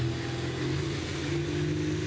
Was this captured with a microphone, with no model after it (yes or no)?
yes